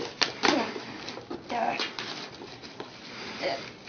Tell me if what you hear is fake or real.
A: fake